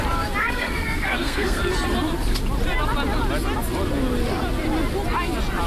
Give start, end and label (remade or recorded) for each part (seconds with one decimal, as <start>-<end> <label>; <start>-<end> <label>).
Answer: 0.0-0.4 recorded; 0.4-1.6 remade; 1.6-5.7 recorded